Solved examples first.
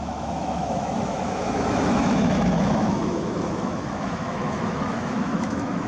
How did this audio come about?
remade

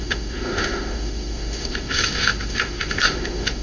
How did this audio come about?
remade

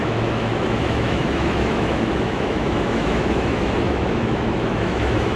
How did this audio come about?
remade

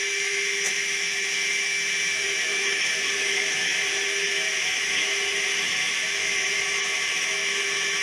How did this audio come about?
remade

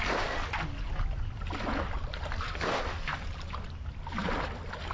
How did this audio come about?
recorded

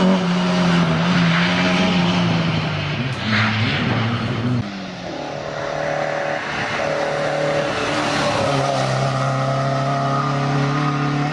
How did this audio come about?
recorded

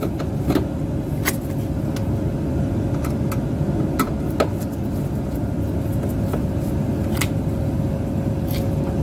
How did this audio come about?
recorded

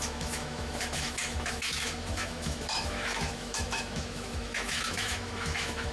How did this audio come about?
remade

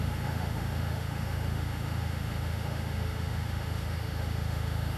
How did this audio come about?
remade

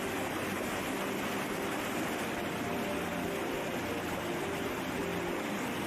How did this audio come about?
recorded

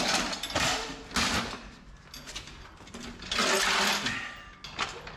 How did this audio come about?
recorded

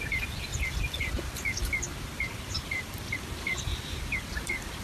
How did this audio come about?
recorded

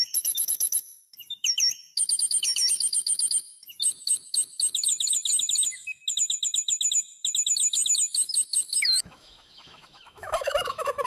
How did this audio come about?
remade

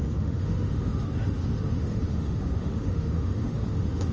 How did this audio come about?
remade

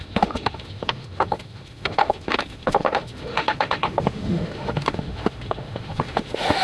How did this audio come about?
remade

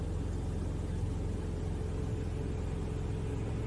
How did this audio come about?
recorded